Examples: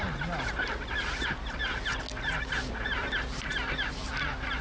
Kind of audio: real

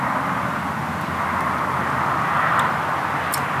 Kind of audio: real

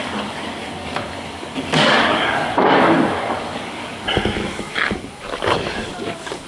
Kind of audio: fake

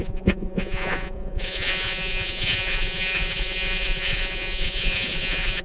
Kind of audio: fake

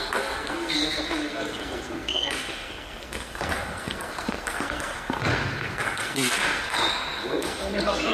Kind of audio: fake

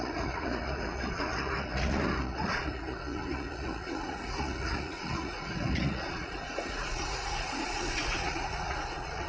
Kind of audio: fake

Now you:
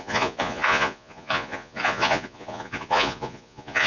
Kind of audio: fake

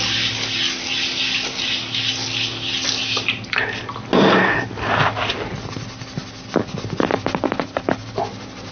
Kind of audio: real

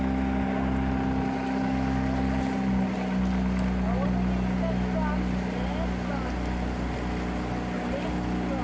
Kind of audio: real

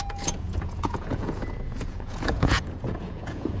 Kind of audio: fake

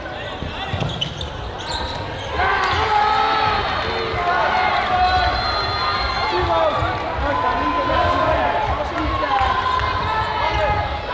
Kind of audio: real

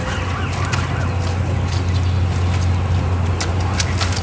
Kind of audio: real